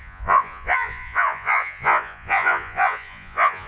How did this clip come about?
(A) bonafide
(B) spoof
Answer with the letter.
B